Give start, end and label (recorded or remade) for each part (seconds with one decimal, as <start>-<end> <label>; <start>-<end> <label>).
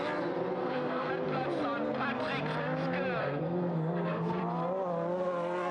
0.0-0.6 recorded; 0.6-1.1 remade; 1.1-3.2 recorded; 3.2-4.4 remade; 4.4-5.7 recorded